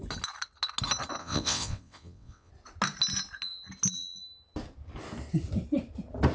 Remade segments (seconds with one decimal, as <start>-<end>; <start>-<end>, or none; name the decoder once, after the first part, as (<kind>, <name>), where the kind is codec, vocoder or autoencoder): 1.2-2.5 (vocoder, WaveNeXt)